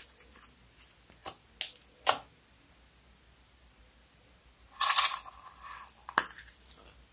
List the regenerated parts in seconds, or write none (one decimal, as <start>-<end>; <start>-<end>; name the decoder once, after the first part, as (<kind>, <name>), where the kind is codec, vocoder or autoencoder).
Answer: none